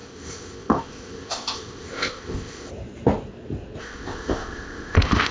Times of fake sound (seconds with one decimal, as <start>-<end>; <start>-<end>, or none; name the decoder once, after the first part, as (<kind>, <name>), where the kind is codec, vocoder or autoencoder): 0.0-2.7 (codec, ZipCodec); 3.8-5.3